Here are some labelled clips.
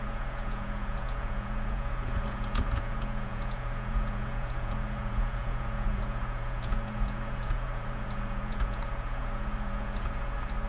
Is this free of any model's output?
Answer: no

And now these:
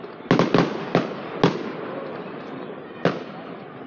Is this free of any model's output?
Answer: yes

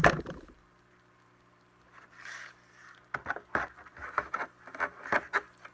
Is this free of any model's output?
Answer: yes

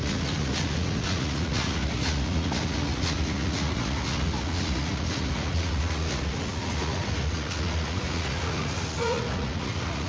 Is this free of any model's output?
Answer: no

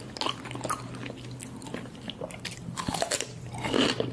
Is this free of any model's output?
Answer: yes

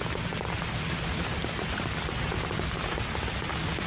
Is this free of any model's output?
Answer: yes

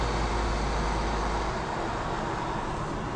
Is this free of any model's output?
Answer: yes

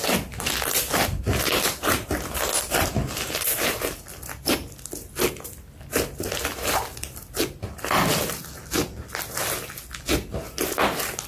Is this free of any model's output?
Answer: yes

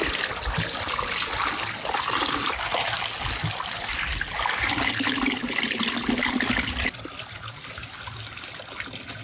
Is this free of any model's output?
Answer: yes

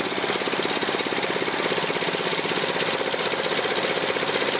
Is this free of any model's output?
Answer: yes